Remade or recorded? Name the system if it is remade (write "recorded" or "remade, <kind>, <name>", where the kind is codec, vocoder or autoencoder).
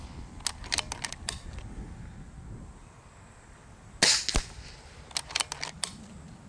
recorded